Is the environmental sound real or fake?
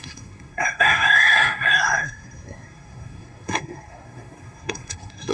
fake